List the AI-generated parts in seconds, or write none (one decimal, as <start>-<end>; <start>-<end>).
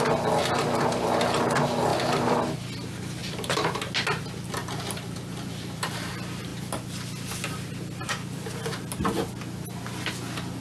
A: 1.9-2.4; 3.2-3.8; 4.6-6.1